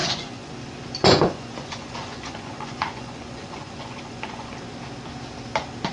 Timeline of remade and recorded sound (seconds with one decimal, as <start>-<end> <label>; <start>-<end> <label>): 0.0-0.5 remade; 0.5-1.0 recorded; 1.0-4.5 remade; 4.5-5.9 recorded